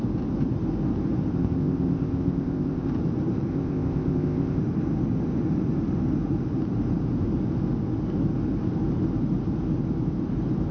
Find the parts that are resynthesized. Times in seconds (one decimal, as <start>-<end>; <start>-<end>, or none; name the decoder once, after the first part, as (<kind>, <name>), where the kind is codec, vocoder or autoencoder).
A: 1.3-2.9 (codec, ZipCodec); 3.5-4.6